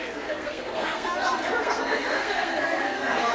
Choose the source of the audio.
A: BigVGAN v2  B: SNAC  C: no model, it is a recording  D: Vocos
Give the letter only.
B